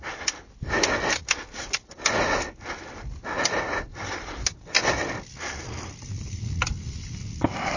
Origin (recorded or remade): recorded